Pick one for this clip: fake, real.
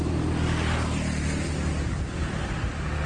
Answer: real